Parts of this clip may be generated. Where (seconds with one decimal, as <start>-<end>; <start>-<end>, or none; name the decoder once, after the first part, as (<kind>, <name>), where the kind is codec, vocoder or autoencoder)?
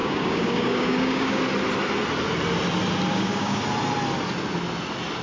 0.0-1.4 (codec, DAC); 3.1-3.6